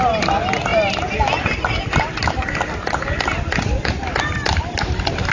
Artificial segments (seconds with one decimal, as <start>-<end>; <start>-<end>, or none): none

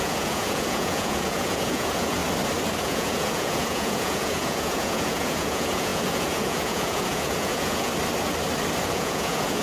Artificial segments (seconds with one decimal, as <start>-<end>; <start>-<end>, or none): 0.0-2.2; 2.8-7.9; 8.9-9.6

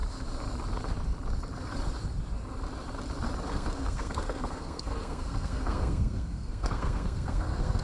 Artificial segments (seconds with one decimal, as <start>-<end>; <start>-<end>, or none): 3.5-7.8